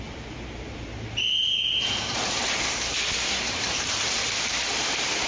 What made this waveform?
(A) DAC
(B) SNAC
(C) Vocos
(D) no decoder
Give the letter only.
D